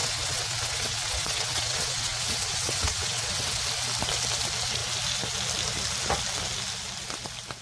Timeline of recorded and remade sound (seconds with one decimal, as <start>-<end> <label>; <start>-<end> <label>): 0.0-3.6 remade; 3.6-7.6 recorded